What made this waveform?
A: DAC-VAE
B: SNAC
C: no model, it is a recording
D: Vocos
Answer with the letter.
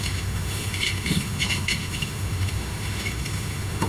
A